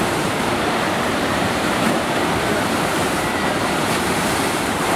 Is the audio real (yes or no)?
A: no